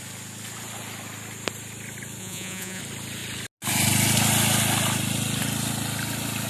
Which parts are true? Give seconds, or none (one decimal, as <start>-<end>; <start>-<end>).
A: 0.0-2.2; 2.8-6.5